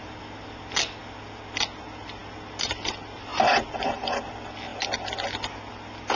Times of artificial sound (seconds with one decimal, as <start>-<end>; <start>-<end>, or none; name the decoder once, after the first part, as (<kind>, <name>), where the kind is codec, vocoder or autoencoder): none